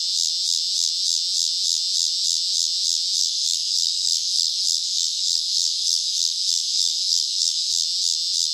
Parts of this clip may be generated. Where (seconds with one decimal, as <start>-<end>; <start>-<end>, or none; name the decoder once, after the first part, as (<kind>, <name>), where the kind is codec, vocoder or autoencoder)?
3.2-7.7 (codec, SNAC)